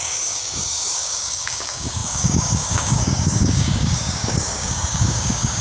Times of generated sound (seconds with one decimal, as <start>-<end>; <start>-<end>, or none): 0.0-5.6